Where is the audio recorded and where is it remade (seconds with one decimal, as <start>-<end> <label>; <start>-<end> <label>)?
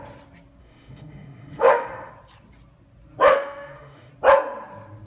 0.0-0.6 recorded; 0.6-2.1 remade; 2.1-3.3 recorded; 3.3-4.1 remade; 4.1-5.1 recorded